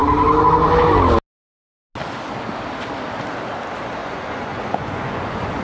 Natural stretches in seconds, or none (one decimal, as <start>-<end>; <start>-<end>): 0.0-4.0